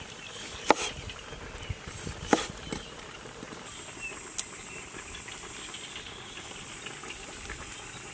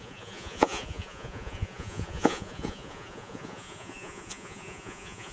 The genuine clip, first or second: first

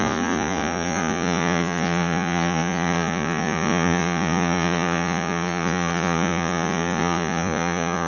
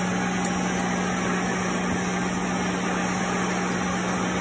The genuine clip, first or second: second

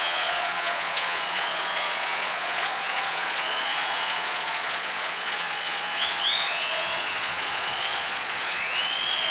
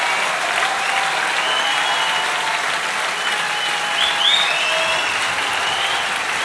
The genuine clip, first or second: second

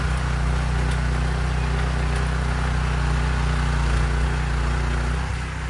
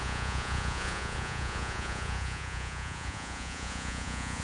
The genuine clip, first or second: first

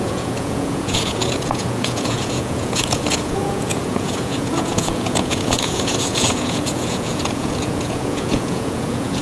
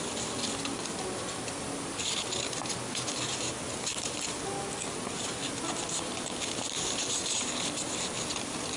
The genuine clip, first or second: second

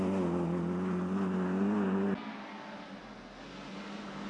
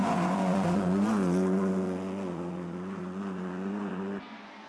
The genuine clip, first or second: first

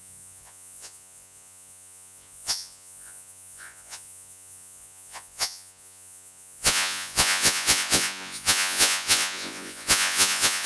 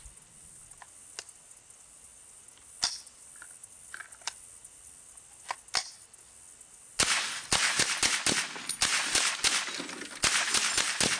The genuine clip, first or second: second